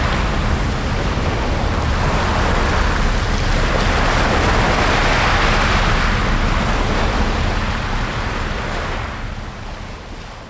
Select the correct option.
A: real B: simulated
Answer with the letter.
A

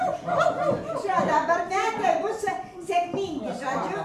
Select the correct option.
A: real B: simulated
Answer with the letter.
B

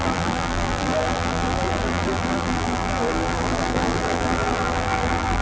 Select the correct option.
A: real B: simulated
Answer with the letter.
B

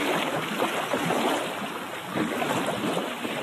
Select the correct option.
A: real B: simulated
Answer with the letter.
A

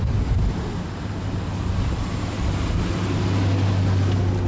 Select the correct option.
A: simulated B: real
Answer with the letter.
B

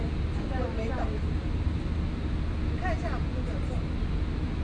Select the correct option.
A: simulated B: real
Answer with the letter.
B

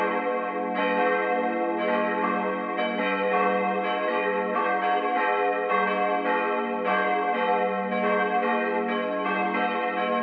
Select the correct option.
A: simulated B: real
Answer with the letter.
B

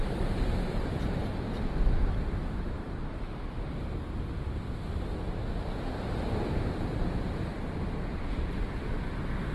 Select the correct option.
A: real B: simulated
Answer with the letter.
B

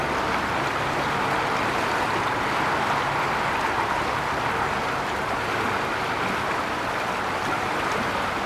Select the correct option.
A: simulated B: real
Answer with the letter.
B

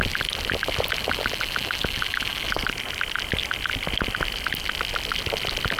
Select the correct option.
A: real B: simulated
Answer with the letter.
A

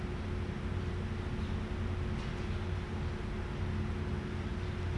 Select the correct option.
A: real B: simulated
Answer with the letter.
A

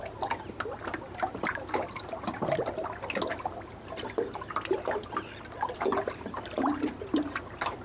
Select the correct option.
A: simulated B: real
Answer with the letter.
B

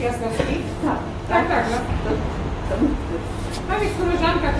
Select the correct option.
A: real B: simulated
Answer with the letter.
A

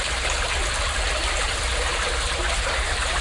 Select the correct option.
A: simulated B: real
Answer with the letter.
A